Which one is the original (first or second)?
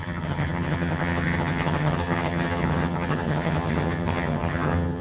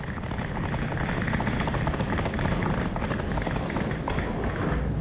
second